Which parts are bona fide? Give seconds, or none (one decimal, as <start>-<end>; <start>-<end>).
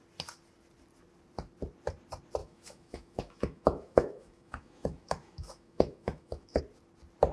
0.0-2.4; 6.6-7.3